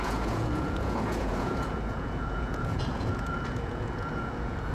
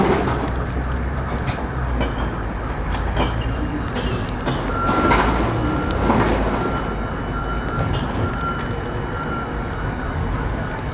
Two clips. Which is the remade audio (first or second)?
first